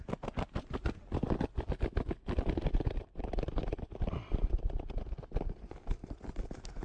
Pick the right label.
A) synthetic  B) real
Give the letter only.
B